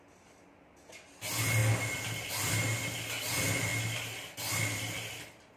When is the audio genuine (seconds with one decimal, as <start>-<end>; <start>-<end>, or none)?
0.0-5.6